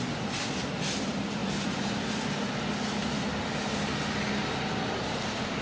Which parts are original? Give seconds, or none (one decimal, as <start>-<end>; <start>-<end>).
0.0-1.4; 2.5-5.6